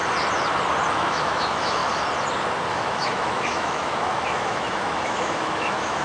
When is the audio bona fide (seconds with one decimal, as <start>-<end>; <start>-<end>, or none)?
0.0-0.9; 1.8-2.7